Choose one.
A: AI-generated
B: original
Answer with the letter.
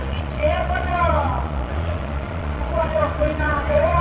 A